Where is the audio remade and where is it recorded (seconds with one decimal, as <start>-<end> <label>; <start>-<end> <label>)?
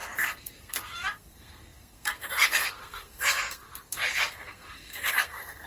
0.0-5.7 remade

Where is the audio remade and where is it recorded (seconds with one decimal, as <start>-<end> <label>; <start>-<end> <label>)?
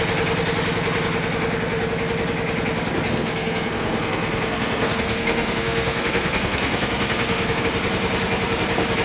0.0-3.1 recorded; 3.1-7.6 remade; 7.6-9.0 recorded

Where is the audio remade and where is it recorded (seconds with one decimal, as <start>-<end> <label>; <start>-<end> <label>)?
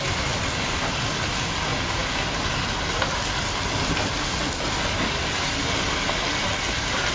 0.0-7.1 recorded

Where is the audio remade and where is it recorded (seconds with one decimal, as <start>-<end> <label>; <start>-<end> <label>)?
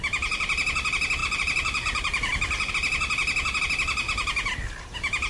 0.0-1.2 recorded; 1.2-2.7 remade; 2.7-5.3 recorded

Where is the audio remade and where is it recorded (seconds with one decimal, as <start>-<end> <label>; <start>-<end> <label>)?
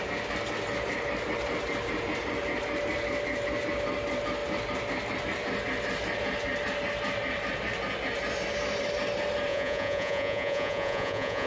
0.0-9.5 recorded; 9.5-11.5 remade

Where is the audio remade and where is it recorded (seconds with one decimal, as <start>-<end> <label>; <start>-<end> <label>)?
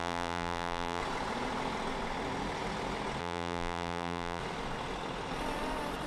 0.0-1.0 remade; 1.0-3.2 recorded; 3.2-4.4 remade; 4.4-6.1 recorded